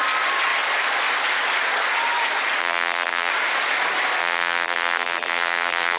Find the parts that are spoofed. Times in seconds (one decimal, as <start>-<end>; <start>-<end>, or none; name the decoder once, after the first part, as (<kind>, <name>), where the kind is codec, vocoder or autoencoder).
2.6-3.3 (vocoder, BigVGAN v2); 4.2-6.0